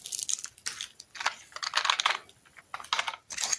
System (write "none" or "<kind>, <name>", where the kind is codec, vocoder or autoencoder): none